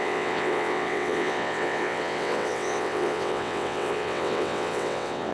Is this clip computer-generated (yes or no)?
yes